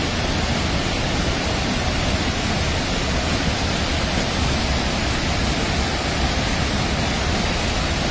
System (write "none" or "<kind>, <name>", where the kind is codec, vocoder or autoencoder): none